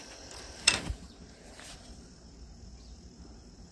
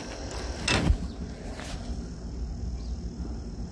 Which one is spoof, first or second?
first